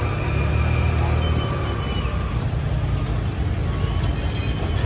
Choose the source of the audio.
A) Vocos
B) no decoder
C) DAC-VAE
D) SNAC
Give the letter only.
B